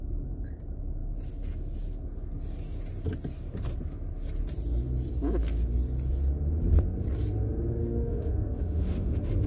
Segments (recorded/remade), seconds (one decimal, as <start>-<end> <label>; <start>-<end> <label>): 0.0-7.8 recorded; 7.8-9.5 remade